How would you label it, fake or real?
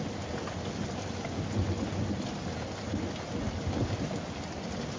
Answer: real